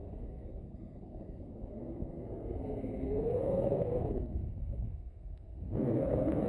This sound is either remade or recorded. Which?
remade